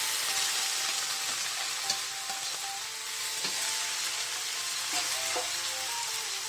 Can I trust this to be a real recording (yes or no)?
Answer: yes